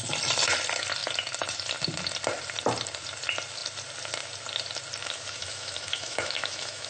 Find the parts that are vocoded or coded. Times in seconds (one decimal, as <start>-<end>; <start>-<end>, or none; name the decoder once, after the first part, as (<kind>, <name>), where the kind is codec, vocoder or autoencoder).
5.0-6.9 (autoencoder, DAC-VAE)